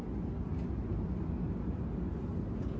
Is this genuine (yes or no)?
yes